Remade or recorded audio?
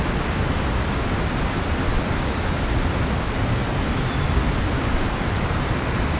recorded